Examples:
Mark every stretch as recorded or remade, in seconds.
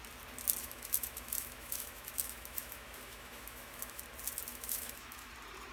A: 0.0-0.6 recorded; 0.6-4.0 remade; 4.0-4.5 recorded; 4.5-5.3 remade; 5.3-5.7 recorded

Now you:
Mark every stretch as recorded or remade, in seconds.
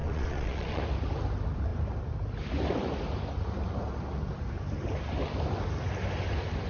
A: 0.0-0.8 remade; 0.8-6.7 recorded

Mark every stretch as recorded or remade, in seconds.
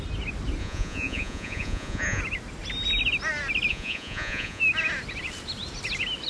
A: 0.0-0.6 recorded; 0.6-2.2 remade; 2.2-3.7 recorded; 3.7-4.6 remade; 4.6-6.3 recorded